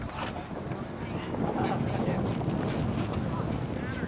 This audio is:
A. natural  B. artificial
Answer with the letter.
A